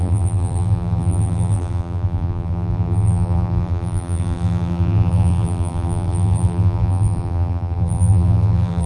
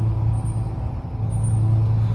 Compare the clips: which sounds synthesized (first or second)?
first